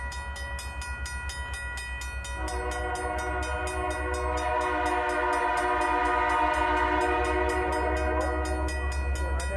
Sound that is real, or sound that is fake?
real